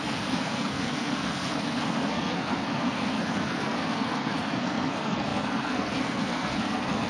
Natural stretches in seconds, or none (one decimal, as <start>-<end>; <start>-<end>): none